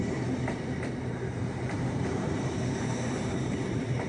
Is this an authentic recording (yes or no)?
no